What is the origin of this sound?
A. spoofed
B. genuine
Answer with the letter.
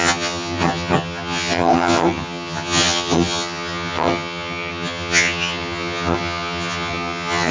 A